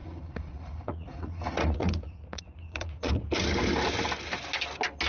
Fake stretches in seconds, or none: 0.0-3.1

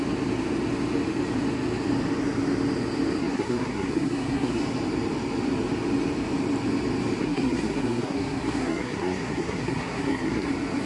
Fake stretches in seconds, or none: 3.2-4.6; 7.2-10.5

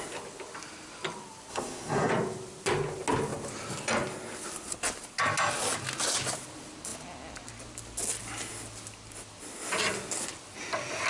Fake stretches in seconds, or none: 1.5-2.1

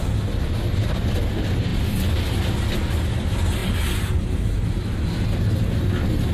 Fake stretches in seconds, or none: 3.6-5.0

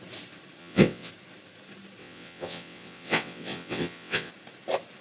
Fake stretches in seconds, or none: 0.6-1.1; 2.0-4.3

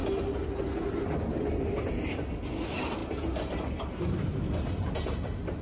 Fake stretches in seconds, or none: none